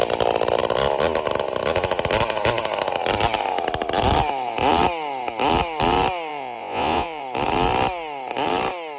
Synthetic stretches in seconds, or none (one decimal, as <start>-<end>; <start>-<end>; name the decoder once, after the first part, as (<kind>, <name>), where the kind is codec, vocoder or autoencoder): 6.3-7.2 (vocoder, Vocos)